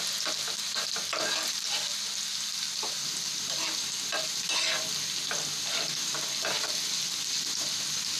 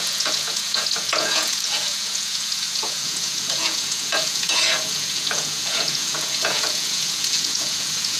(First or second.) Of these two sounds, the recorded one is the first